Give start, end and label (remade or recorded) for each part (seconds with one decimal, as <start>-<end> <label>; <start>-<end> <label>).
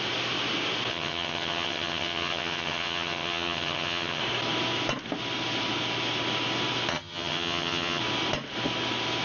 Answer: 0.0-0.9 recorded; 0.9-4.2 remade; 4.2-6.9 recorded; 6.9-8.0 remade; 8.0-9.2 recorded